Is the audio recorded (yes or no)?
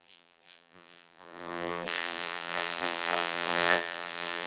no